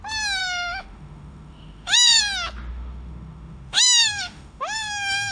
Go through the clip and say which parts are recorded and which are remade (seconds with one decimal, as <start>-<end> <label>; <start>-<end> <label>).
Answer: 0.0-0.4 recorded; 0.4-2.2 remade; 2.2-2.7 recorded; 2.7-5.3 remade